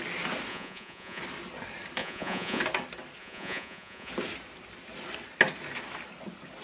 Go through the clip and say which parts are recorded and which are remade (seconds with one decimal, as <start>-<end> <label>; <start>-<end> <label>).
0.0-0.5 recorded; 0.5-1.2 remade; 1.2-2.0 recorded; 2.0-2.6 remade; 2.6-3.2 recorded; 3.2-4.1 remade; 4.1-6.6 recorded

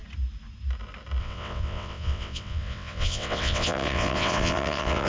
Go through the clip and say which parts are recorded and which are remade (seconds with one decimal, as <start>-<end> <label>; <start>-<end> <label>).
0.0-1.2 recorded; 1.2-5.1 remade